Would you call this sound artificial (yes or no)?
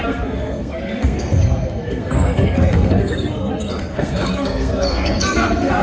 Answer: yes